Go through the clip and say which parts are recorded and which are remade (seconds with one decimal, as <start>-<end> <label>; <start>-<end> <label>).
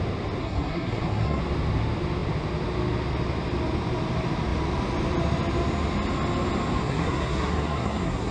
0.0-0.4 recorded; 0.4-1.4 remade; 1.4-6.8 recorded; 6.8-8.3 remade